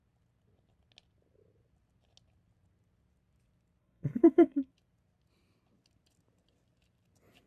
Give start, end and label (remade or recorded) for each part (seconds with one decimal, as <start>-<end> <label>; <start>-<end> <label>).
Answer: 0.0-3.8 recorded; 3.8-4.7 remade; 4.7-7.5 recorded